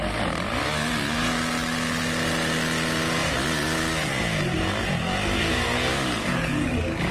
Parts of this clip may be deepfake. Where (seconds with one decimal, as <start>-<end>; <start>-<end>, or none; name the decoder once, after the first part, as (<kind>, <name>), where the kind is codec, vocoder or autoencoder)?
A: 5.4-7.1 (codec, DAC)